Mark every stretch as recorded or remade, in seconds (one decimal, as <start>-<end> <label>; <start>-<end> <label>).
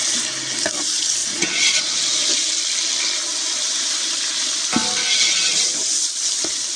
0.0-1.2 recorded; 1.2-1.8 remade; 1.8-6.8 recorded